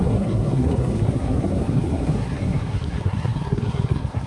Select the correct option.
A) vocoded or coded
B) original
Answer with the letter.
A